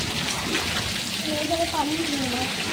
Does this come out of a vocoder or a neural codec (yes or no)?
no